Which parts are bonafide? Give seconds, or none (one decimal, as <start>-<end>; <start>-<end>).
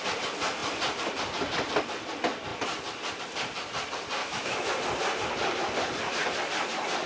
0.0-4.2; 4.7-7.1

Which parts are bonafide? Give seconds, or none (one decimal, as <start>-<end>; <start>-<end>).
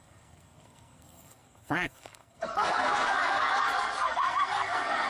none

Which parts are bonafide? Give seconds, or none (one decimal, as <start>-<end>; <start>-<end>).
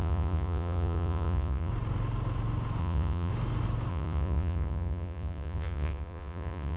1.7-2.8; 3.3-3.9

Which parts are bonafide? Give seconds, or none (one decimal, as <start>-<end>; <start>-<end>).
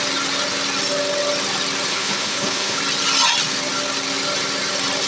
0.0-1.9; 2.8-5.1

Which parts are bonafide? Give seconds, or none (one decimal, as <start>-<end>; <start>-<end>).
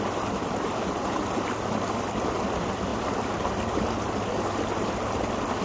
0.0-5.6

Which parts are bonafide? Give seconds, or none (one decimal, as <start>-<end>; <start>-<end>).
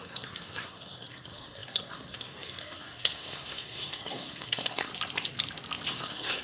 4.9-5.9